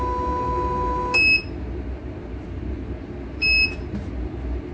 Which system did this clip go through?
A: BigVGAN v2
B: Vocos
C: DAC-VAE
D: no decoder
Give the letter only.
D